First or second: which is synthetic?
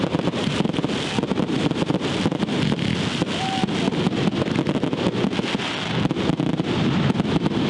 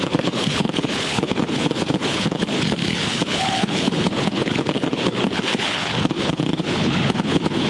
second